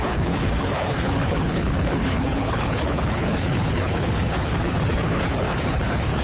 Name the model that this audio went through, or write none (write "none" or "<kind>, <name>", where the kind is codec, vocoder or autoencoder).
codec, HILCodec